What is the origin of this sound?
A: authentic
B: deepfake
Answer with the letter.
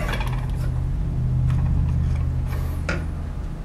A